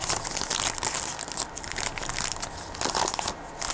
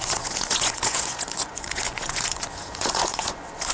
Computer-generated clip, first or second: second